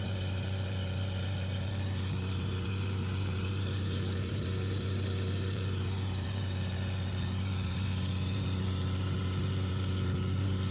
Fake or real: fake